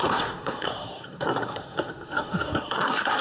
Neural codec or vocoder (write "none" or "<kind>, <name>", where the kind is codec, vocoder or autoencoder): codec, SNAC